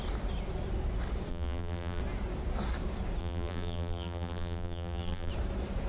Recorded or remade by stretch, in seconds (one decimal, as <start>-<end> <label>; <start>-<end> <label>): 0.0-1.3 recorded; 1.3-2.0 remade; 2.0-3.2 recorded; 3.2-5.3 remade; 5.3-5.9 recorded